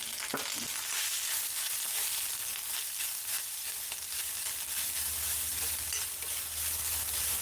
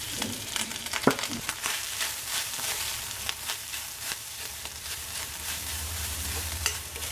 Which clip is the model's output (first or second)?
second